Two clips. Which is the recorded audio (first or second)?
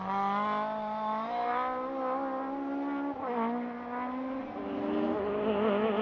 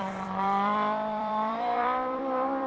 first